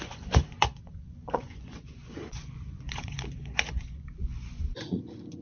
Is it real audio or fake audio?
fake